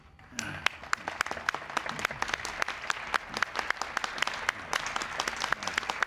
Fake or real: real